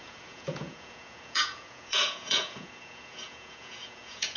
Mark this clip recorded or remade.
remade